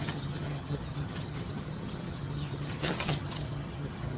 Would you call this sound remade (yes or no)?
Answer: yes